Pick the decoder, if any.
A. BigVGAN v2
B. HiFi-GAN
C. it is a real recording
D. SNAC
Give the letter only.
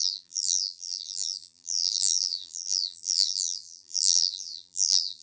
A